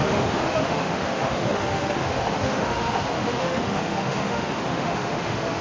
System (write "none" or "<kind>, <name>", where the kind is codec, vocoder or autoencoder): autoencoder, DAC-VAE